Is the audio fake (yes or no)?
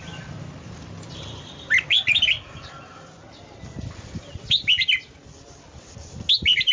no